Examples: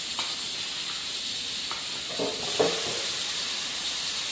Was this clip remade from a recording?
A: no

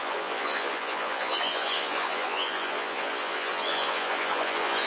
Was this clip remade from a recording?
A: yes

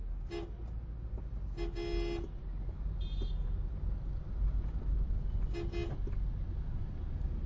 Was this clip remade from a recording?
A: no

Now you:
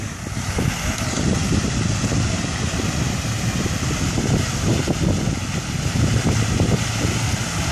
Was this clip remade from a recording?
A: no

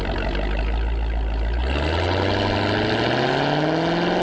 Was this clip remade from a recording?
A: no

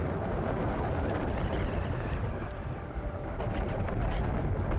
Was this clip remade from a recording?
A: no